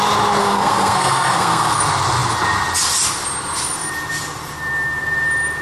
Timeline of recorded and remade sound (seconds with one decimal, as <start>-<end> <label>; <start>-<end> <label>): 0.0-0.4 recorded; 0.4-1.8 remade; 1.8-5.6 recorded